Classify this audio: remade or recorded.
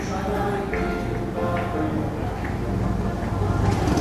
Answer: recorded